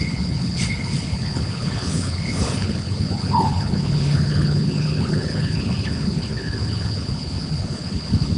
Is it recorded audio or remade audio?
remade